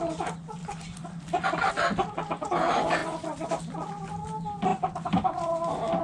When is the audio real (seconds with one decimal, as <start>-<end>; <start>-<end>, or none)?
0.0-0.6; 1.7-6.0